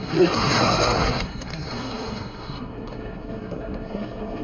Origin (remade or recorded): remade